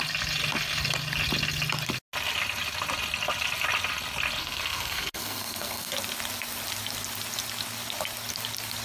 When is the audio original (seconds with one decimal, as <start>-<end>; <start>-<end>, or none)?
0.0-4.4; 5.9-8.8